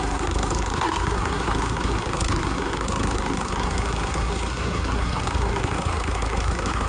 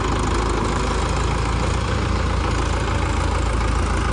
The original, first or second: second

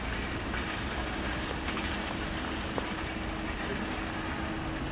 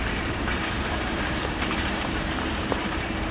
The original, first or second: first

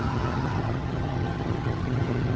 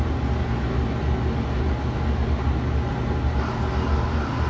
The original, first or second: second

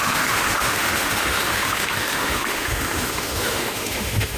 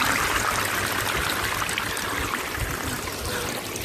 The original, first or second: second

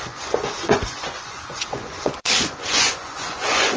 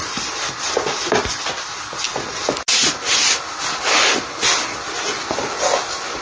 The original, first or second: second